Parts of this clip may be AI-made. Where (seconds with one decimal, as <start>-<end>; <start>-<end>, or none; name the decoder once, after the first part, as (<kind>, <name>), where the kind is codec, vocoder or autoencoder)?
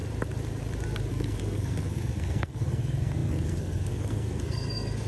1.1-5.1 (codec, SNAC)